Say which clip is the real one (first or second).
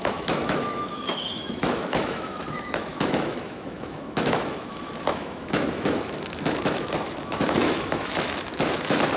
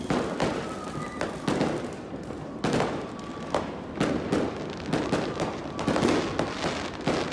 second